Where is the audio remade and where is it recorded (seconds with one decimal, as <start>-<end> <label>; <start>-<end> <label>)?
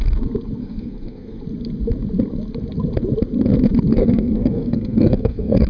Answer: 0.0-0.6 recorded; 0.6-1.4 remade; 1.4-3.9 recorded; 3.9-5.7 remade